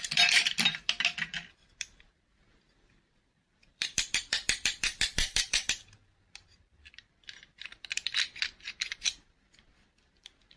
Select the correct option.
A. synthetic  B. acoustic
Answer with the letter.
A